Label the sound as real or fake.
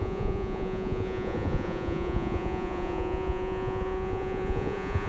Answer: fake